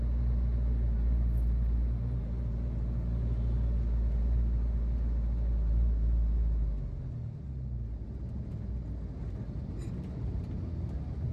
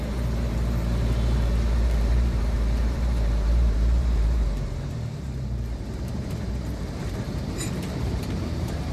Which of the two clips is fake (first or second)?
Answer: second